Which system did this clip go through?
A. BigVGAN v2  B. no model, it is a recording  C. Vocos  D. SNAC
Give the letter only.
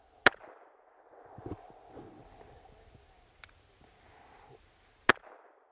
B